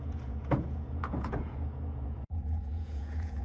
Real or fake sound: fake